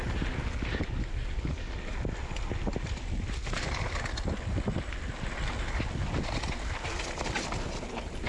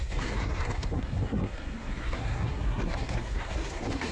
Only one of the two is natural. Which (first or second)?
first